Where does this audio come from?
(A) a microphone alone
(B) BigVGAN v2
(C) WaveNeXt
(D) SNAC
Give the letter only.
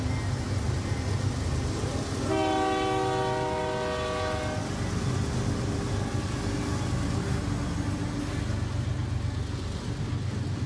A